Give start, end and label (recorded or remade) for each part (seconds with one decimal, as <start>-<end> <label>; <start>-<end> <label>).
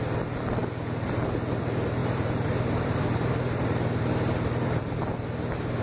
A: 0.0-2.0 recorded; 2.0-5.0 remade; 5.0-5.8 recorded